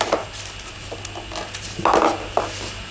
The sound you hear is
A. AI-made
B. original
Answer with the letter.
B